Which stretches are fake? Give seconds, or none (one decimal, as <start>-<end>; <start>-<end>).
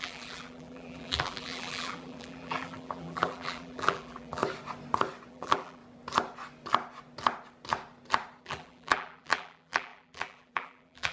0.0-4.4; 5.3-5.8; 8.4-11.1